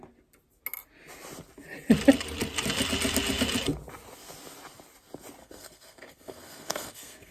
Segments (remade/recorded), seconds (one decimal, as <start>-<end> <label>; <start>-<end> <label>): 0.0-5.4 recorded; 5.4-7.3 remade